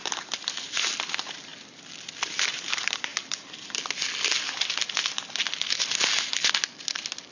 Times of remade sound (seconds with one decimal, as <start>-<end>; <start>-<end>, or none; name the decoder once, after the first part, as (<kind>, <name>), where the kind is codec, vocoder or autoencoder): none